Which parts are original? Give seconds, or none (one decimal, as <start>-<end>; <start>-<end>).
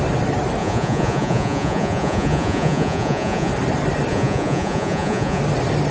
0.0-0.6; 3.5-4.1; 5.4-5.9